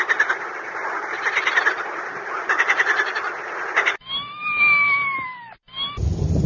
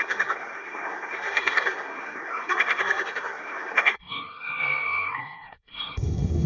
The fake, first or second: second